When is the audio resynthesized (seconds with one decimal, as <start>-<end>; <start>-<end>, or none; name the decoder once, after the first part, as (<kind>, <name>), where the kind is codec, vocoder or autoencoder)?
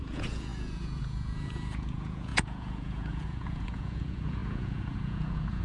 0.0-5.6 (vocoder, Vocos)